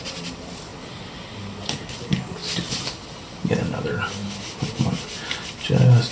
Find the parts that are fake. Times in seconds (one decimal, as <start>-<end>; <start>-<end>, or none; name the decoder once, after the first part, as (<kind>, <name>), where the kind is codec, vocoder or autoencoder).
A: 0.0-0.7 (vocoder, BigVGAN v2); 1.6-2.4; 3.3-4.2